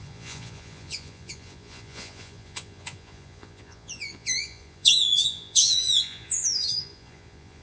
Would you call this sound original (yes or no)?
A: no